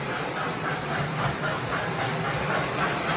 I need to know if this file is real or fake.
fake